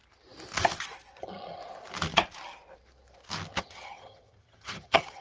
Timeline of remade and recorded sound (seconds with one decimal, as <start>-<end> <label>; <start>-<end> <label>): 0.0-1.2 recorded; 1.2-1.6 remade; 1.6-3.6 recorded; 3.6-5.2 remade

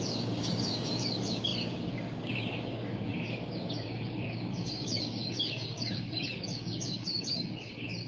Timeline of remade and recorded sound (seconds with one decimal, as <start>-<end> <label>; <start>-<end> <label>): 0.0-8.1 remade